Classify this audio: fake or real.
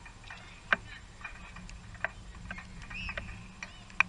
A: real